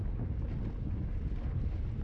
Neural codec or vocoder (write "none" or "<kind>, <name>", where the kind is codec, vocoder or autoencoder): none